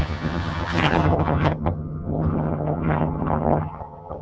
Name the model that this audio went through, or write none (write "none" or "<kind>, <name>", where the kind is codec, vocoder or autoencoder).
vocoder, HiFi-GAN